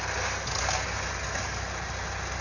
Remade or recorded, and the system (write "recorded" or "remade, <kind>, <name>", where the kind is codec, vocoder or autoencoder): recorded